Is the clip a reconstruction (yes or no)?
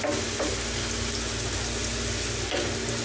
no